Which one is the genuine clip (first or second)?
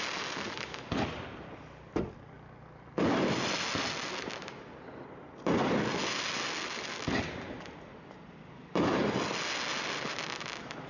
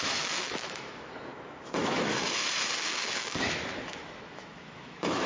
first